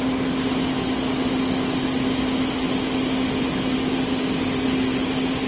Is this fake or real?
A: real